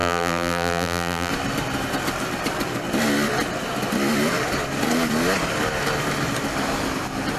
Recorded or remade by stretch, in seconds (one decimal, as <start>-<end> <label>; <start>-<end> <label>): 0.0-1.3 remade; 1.3-7.4 recorded